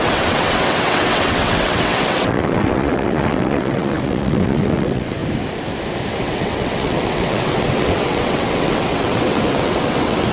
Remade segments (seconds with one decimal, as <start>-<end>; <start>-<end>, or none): 0.0-5.2; 6.2-10.3